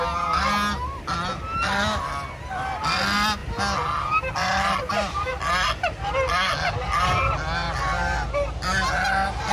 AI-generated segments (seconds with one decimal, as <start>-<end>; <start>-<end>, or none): none